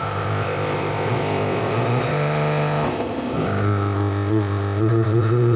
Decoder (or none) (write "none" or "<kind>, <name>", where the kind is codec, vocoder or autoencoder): codec, ZipCodec